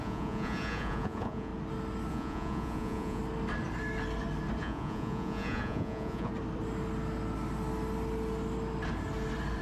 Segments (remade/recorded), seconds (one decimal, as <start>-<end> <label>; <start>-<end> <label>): 0.0-1.5 remade; 1.5-2.1 recorded; 2.1-3.2 remade; 3.2-4.6 recorded; 4.6-6.3 remade; 6.3-9.6 recorded